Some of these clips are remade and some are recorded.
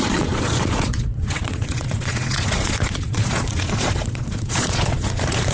remade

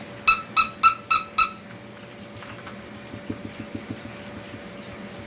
recorded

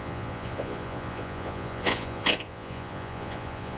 remade